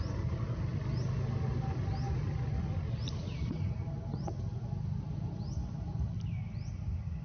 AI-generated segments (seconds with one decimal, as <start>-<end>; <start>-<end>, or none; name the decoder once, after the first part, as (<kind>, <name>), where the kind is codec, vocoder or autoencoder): none